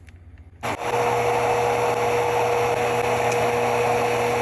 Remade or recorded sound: recorded